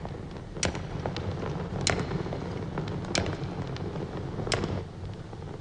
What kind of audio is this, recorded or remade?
recorded